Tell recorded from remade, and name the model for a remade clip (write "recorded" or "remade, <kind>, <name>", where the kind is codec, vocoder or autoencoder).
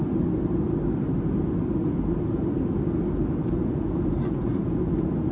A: recorded